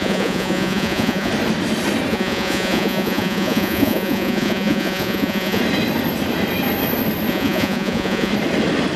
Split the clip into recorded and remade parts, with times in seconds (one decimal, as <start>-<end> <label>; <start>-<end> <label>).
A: 0.0-1.3 remade; 1.3-2.1 recorded; 2.1-5.6 remade; 5.6-7.3 recorded; 7.3-8.3 remade; 8.3-9.0 recorded